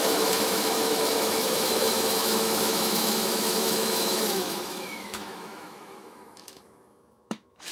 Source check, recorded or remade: remade